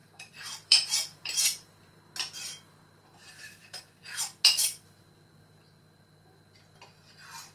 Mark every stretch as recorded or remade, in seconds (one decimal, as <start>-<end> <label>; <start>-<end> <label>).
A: 0.0-2.0 remade; 2.0-3.2 recorded; 3.2-3.8 remade; 3.8-7.5 recorded

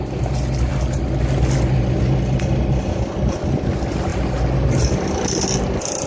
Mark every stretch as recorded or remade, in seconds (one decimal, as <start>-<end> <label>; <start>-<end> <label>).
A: 0.0-6.1 recorded